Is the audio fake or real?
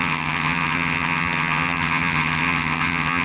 fake